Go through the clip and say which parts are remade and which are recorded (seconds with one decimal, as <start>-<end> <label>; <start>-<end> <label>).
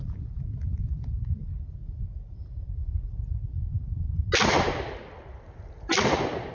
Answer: 0.0-6.5 recorded